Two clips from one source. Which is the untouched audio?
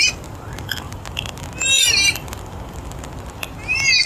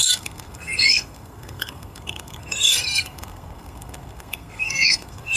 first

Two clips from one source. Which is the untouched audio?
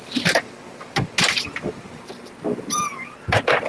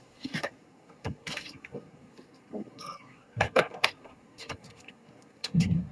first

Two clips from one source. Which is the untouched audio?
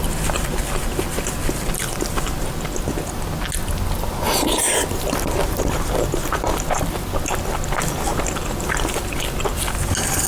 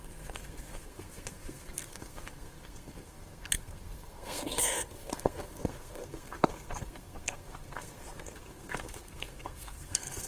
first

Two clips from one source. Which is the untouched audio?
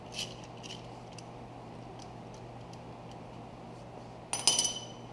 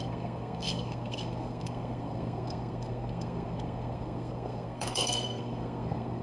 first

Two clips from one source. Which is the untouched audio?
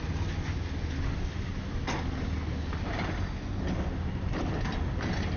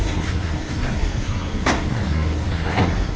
first